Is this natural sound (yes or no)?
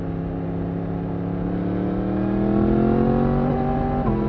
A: yes